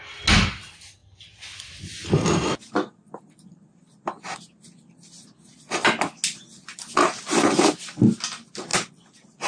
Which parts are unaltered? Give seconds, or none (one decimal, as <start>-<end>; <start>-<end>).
0.0-9.5